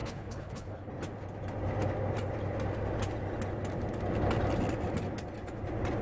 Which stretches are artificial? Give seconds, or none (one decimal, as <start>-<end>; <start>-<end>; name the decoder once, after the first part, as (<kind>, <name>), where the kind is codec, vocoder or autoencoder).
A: 0.0-0.9 (codec, HILCodec)